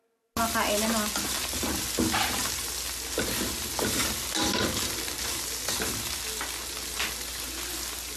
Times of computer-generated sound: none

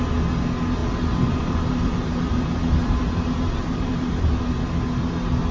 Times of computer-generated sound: 0.8-4.1

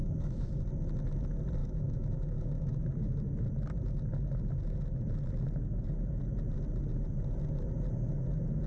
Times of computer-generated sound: 0.0-0.6; 1.6-2.8

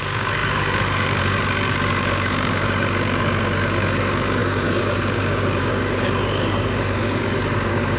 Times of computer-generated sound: 0.0-8.0

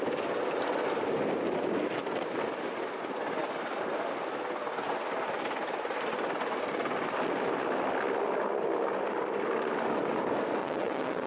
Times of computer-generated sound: 10.6-11.3

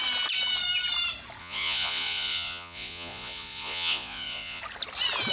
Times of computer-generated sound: 1.4-4.6

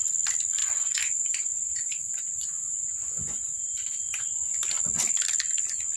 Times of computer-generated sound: 0.6-4.2